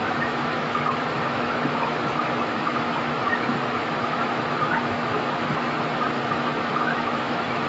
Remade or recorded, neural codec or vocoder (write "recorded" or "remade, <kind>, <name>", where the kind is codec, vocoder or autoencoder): remade, autoencoder, DAC-VAE